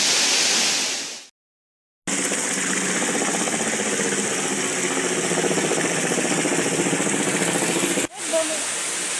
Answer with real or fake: real